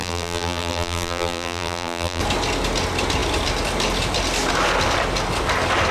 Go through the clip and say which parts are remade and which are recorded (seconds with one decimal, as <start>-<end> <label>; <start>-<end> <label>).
0.0-2.2 remade; 2.2-5.9 recorded